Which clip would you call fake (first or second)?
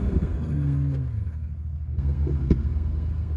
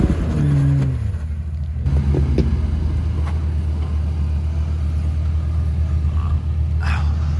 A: first